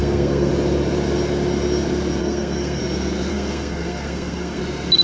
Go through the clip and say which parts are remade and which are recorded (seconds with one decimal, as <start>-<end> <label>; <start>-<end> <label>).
0.0-0.5 remade; 0.5-2.2 recorded; 2.2-2.8 remade; 2.8-3.3 recorded; 3.3-4.6 remade; 4.6-5.0 recorded